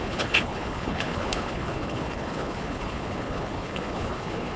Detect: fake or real fake